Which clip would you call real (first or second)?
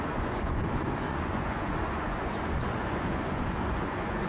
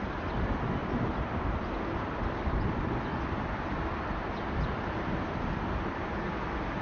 second